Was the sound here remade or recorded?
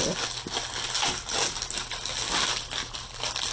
recorded